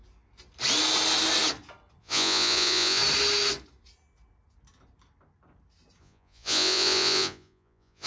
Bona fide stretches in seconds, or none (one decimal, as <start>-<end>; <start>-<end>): 0.0-2.0; 3.0-6.0